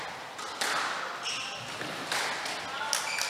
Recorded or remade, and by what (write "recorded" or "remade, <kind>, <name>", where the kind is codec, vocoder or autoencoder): recorded